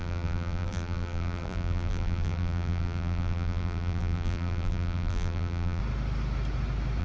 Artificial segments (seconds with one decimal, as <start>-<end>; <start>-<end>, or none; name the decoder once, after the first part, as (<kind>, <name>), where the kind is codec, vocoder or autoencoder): 0.0-5.8 (vocoder, BigVGAN v2)